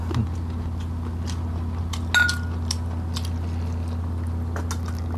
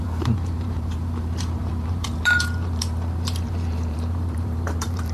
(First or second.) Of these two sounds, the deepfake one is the second